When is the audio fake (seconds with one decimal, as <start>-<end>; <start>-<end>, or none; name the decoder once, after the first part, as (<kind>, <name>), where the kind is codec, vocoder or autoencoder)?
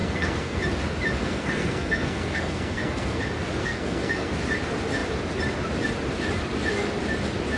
0.0-0.6 (codec, SNAC); 1.2-3.2; 3.6-4.3